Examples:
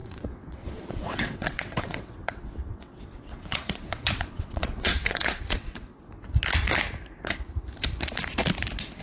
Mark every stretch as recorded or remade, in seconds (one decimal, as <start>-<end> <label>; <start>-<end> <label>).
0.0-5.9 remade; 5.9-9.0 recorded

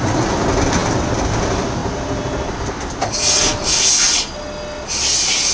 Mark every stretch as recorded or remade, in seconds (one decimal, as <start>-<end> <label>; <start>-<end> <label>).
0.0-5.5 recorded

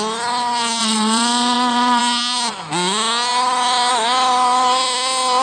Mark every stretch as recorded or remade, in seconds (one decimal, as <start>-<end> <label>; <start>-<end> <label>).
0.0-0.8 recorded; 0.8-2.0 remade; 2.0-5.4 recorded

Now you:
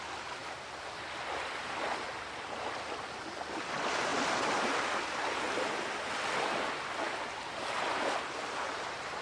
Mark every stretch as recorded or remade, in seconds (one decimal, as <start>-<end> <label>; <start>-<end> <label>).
0.0-9.2 recorded